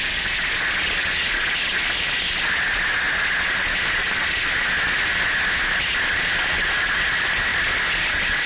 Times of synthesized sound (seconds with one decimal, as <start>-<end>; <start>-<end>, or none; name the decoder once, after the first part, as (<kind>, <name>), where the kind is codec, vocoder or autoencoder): none